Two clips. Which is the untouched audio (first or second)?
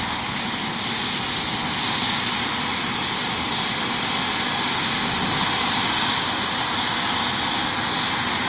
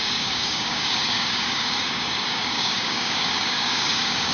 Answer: first